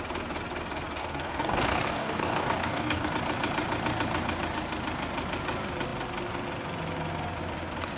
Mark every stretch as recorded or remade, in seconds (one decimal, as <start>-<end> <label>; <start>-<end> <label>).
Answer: 0.0-1.0 recorded; 1.0-3.1 remade; 3.1-8.0 recorded

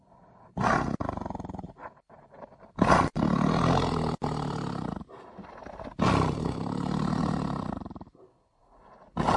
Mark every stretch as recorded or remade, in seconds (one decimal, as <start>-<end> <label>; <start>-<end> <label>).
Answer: 0.0-9.4 recorded

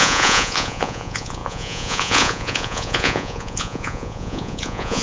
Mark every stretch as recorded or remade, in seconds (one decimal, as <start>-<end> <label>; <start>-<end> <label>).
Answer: 0.0-5.0 remade

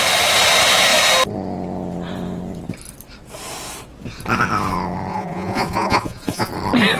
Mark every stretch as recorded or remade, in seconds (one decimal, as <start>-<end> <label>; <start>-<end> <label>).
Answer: 0.0-5.1 recorded; 5.1-6.5 remade; 6.5-7.0 recorded

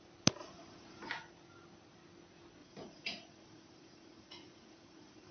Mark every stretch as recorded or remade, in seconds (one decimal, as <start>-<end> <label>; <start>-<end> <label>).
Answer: 0.0-0.4 recorded; 0.4-1.1 remade; 1.1-2.6 recorded; 2.6-5.3 remade